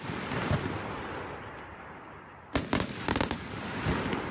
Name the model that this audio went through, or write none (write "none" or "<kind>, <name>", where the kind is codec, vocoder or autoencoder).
none